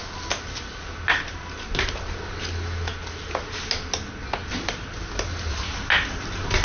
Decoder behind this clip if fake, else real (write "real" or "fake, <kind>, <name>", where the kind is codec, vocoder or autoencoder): real